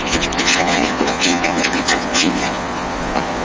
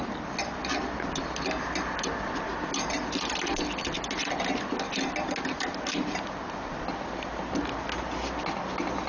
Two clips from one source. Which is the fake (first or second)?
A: first